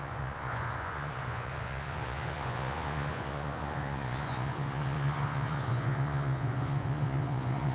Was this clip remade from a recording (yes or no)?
yes